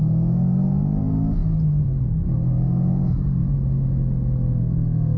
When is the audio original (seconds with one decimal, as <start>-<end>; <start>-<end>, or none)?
0.0-5.2